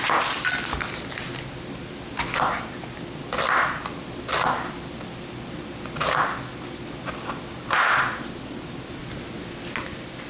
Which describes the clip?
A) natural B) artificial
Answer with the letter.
A